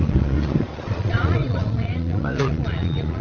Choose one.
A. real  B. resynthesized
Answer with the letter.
B